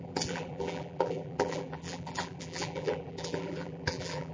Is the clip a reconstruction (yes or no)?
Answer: yes